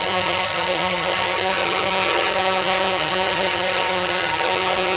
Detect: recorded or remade remade